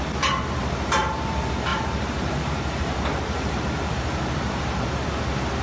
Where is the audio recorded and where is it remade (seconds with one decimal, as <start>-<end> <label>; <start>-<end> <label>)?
0.0-1.7 recorded; 1.7-5.1 remade; 5.1-5.6 recorded